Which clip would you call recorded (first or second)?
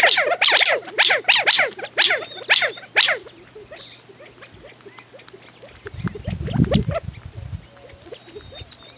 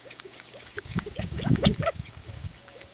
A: first